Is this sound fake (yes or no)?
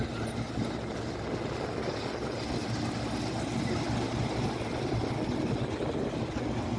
no